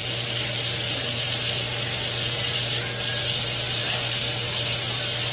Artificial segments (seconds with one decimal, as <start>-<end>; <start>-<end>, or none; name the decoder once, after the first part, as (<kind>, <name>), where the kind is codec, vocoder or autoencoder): none